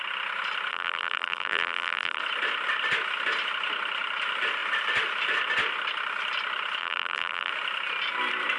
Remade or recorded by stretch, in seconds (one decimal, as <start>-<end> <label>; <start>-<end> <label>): 0.0-0.7 recorded; 0.7-2.2 remade; 2.2-6.8 recorded; 6.8-7.5 remade; 7.5-8.6 recorded